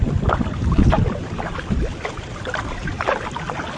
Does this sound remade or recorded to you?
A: recorded